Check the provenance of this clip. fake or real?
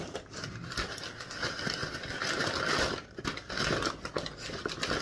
real